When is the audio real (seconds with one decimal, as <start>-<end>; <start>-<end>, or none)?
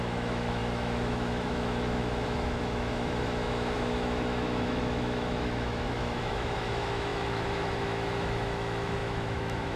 none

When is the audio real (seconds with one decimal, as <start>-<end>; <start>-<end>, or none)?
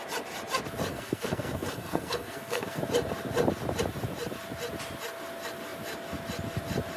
0.0-0.9; 2.8-7.0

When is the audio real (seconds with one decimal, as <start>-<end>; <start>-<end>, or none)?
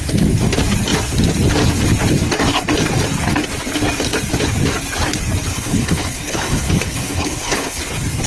0.0-5.5; 7.8-8.3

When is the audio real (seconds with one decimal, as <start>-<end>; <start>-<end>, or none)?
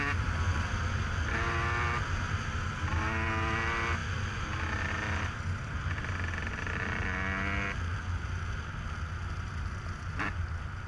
0.0-10.9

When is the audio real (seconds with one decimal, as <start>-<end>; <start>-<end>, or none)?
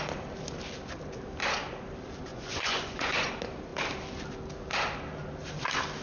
0.0-2.3; 3.3-6.0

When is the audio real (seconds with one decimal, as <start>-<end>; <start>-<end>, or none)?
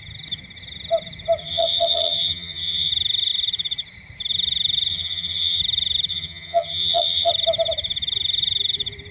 0.0-1.4; 2.9-4.9; 5.6-6.1; 7.3-9.1